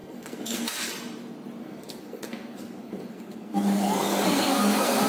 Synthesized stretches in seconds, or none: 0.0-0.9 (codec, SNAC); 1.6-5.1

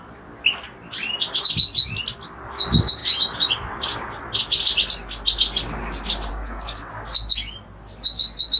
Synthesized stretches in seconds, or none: 6.3-6.9 (codec, SNAC)

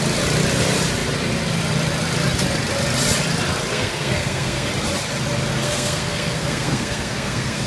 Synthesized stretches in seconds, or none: 3.7-4.7 (codec, SNAC); 5.5-7.7

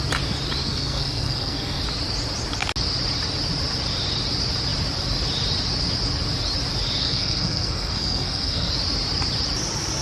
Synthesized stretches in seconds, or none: 0.6-1.8 (codec, SNAC); 7.0-8.7

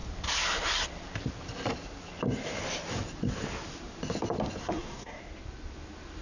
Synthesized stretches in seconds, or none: 4.6-5.2 (codec, SNAC)

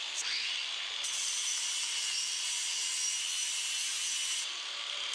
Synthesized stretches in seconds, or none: none

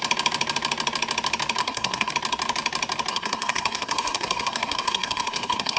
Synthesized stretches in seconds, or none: 1.6-2.1 (codec, SNAC); 3.1-5.8